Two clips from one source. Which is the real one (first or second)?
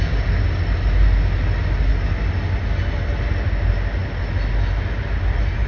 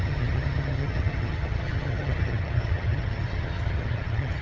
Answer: first